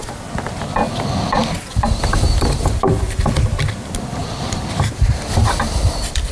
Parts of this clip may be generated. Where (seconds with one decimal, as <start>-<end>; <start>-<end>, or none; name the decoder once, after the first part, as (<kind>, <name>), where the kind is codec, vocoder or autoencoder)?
1.4-3.5 (vocoder, BigVGAN v2); 4.2-4.9; 5.4-6.3